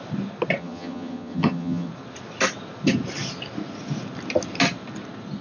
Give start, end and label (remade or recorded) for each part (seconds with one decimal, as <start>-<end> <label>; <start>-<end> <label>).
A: 0.0-0.6 recorded; 0.6-1.9 remade; 1.9-5.4 recorded